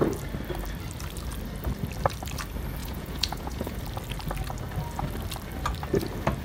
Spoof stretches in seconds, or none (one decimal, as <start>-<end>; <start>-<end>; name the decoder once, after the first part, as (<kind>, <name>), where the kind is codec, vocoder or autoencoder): 2.8-3.8 (vocoder, Vocos)